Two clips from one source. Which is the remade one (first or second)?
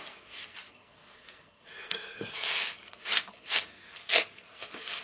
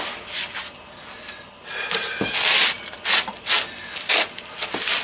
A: first